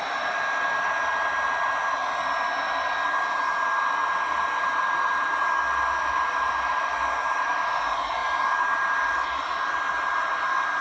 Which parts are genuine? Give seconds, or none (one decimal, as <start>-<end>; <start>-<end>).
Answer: 0.0-10.8